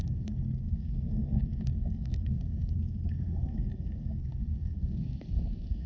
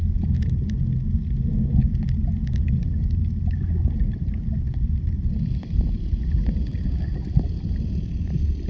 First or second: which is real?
second